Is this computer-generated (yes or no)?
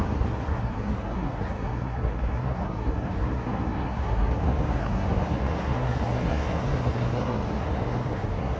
yes